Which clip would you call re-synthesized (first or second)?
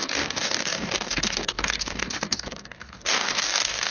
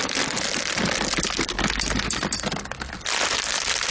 first